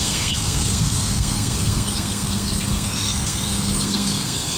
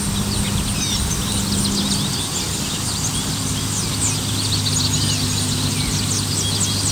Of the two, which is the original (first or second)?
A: second